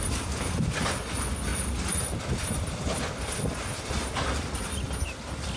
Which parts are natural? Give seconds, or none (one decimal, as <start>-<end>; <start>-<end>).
0.0-5.6